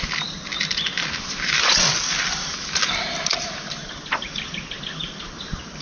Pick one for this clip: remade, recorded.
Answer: recorded